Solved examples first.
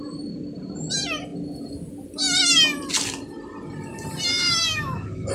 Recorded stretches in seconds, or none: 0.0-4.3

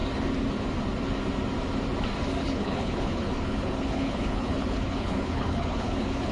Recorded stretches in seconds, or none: 0.0-2.4

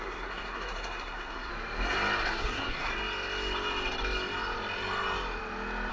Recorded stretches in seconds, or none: 1.5-2.3; 2.9-5.9